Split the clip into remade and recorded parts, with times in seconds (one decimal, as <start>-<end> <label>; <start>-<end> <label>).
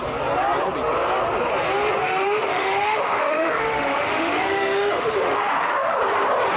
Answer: 0.0-2.0 recorded; 2.0-6.0 remade; 6.0-6.6 recorded